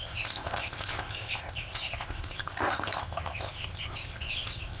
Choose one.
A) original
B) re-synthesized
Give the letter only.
B